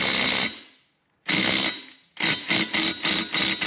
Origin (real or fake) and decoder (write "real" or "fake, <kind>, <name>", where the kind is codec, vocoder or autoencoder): real